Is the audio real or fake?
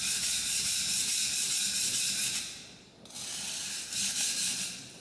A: fake